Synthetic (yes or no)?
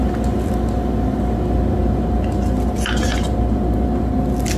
no